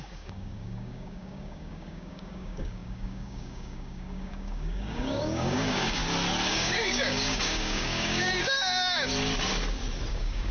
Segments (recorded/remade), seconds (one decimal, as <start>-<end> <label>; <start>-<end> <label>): 0.0-6.0 remade; 6.0-6.5 recorded; 6.5-9.1 remade; 9.1-10.1 recorded; 10.1-10.5 remade